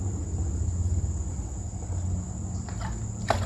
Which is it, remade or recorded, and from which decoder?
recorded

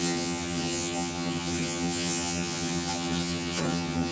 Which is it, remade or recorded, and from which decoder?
remade, vocoder, HiFi-GAN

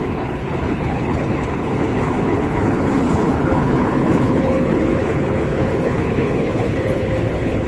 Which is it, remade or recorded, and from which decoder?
remade, codec, HILCodec